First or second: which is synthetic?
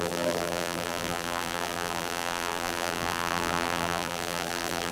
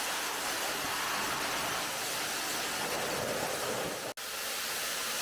first